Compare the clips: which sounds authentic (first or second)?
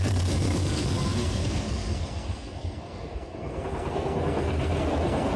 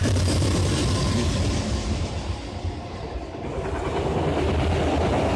second